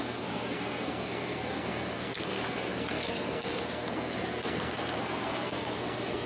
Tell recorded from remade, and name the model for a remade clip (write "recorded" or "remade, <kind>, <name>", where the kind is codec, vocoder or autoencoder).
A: remade, codec, SNAC